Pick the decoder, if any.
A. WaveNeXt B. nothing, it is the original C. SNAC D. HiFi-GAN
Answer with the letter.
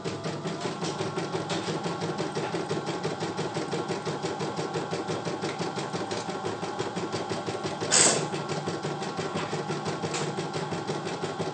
B